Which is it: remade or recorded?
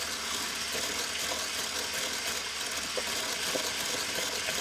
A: recorded